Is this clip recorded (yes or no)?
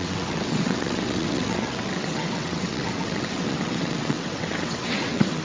no